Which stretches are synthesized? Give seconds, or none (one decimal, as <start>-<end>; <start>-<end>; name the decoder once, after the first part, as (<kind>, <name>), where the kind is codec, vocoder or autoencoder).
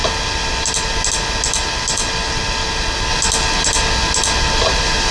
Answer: none